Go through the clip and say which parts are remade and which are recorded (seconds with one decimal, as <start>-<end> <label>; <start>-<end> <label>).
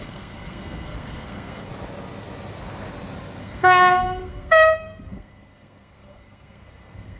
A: 0.0-1.7 remade; 1.7-3.4 recorded; 3.4-7.2 remade